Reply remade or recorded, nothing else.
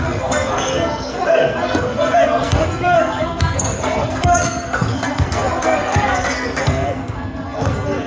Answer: remade